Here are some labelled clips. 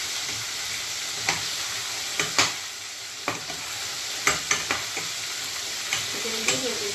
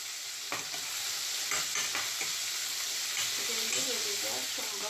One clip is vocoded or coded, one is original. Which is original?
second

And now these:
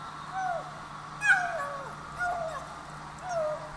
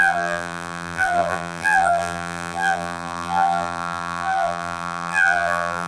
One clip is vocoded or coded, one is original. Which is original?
first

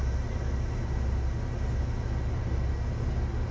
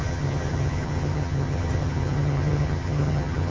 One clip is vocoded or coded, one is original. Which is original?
first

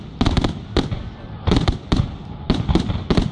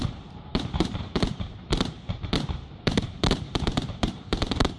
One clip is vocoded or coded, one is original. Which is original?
first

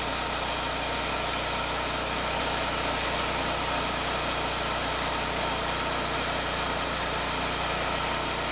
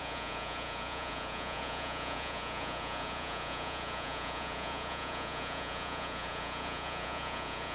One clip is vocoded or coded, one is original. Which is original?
first